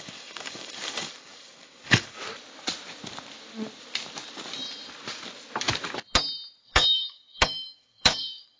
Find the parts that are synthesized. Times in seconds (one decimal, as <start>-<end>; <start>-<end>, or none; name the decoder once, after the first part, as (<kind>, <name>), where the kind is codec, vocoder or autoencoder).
0.0-2.2 (codec, DAC); 6.6-8.6